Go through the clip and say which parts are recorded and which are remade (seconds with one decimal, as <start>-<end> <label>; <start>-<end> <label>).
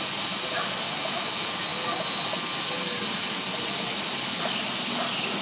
0.0-5.4 recorded